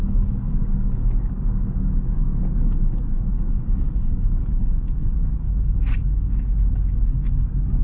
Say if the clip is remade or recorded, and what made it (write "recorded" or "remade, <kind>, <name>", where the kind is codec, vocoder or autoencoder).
remade, codec, DAC